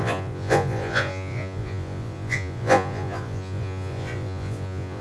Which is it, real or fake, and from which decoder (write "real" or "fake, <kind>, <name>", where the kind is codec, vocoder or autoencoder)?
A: fake, vocoder, Vocos